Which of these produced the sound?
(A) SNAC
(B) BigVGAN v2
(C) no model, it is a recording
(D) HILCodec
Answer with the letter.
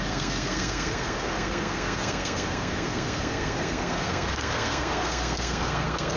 A